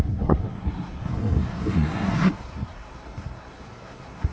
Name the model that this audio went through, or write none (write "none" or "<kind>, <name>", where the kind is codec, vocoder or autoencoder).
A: codec, SNAC